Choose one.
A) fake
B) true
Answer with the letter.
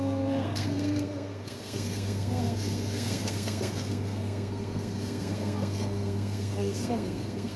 A